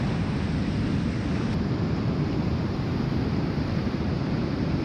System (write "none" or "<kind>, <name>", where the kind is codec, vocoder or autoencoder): vocoder, BigVGAN v2